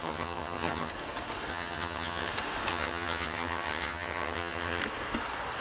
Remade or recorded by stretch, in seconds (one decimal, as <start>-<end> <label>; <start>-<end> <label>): 0.0-0.9 remade; 0.9-1.5 recorded; 1.5-2.3 remade; 2.3-2.7 recorded; 2.7-4.8 remade; 4.8-5.6 recorded